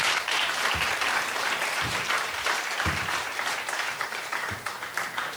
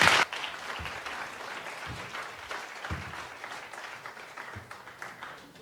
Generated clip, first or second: first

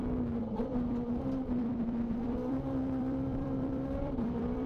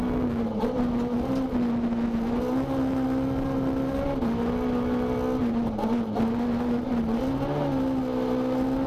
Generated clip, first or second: first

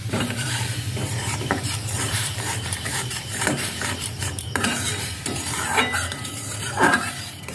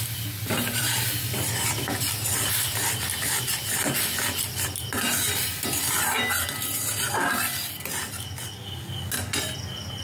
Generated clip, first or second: first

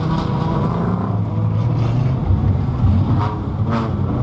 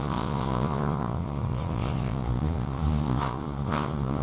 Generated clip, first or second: second